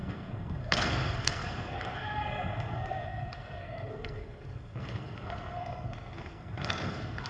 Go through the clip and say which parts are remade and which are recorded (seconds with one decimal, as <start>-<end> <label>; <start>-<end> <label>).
0.0-7.3 remade